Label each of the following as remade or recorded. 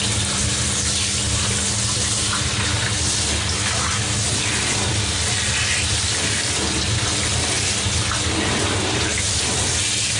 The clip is recorded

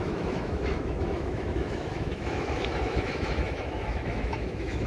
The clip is remade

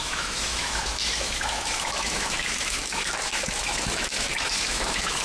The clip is remade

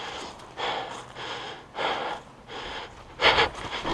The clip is recorded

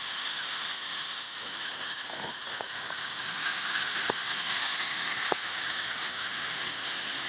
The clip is remade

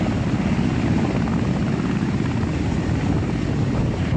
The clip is recorded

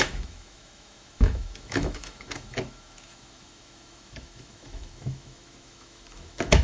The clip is remade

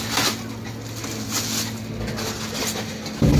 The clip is recorded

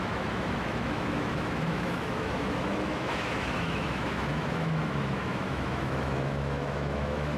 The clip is remade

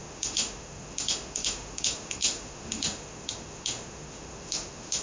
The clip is remade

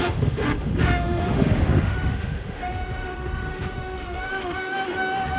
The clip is remade